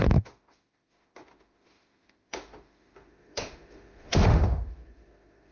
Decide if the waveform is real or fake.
fake